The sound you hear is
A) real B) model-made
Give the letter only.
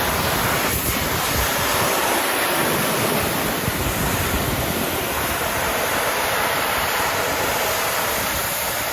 B